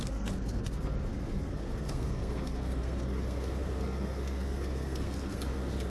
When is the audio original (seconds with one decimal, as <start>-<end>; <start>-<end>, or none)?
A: none